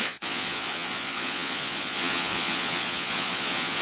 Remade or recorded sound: remade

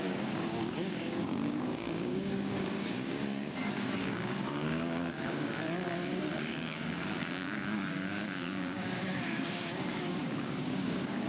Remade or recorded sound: remade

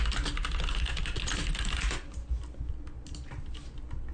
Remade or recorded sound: recorded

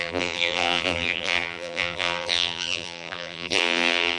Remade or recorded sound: remade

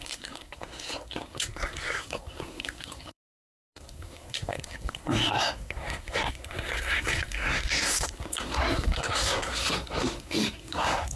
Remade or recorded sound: remade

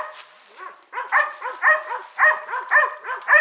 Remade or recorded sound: recorded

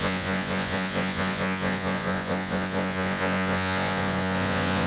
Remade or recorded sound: remade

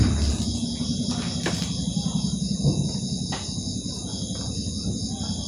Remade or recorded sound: recorded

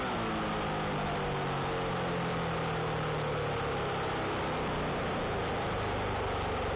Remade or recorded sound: recorded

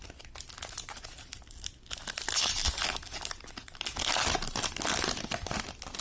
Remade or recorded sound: recorded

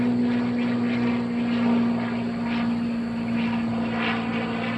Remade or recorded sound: recorded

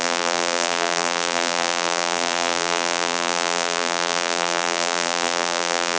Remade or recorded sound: remade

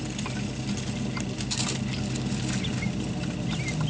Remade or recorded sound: recorded